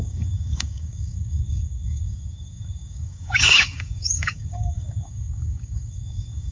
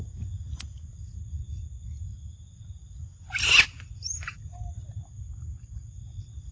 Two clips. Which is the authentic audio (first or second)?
second